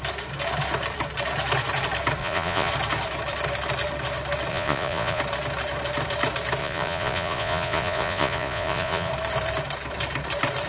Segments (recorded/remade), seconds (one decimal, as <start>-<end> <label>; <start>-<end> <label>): 0.0-2.2 recorded; 2.2-2.7 remade; 2.7-4.5 recorded; 4.5-5.2 remade; 5.2-6.6 recorded; 6.6-9.1 remade; 9.1-10.7 recorded

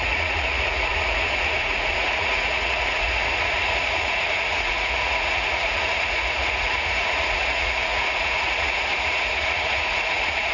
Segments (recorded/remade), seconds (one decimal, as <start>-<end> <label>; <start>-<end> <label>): 0.0-10.5 remade

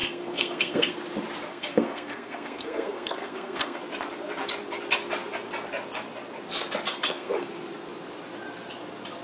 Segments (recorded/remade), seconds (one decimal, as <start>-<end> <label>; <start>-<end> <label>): 0.0-1.0 remade; 1.0-1.5 recorded; 1.5-3.8 remade; 3.8-6.9 recorded; 6.9-7.5 remade; 7.5-9.2 recorded

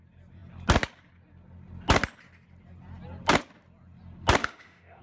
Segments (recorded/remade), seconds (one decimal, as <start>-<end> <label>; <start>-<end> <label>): 0.0-4.4 recorded; 4.4-5.0 remade